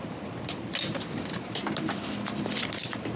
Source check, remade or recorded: recorded